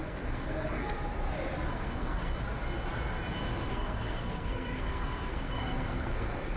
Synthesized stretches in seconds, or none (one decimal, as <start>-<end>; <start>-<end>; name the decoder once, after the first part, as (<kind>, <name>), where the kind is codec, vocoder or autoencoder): 0.0-0.9 (codec, SNAC); 1.7-2.3; 3.7-6.6